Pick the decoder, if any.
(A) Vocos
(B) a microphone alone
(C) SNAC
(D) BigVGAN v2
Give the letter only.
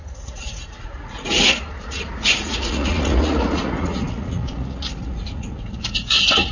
A